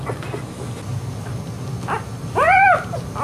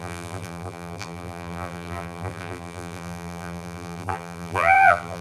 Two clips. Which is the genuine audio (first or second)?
first